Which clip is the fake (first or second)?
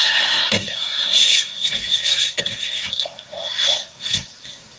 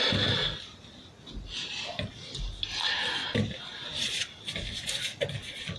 first